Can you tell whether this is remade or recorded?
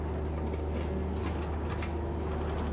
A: recorded